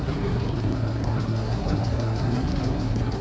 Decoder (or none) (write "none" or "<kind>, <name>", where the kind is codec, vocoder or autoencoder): codec, SNAC